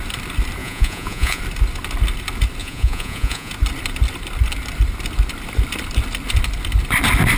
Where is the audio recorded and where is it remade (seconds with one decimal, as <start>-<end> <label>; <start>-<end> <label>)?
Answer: 0.0-0.6 recorded; 0.6-1.4 remade; 1.4-2.6 recorded; 2.6-3.5 remade; 3.5-7.4 recorded